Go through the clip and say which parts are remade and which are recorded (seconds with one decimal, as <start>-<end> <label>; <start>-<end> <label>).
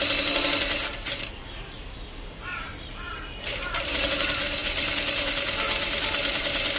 0.0-6.8 recorded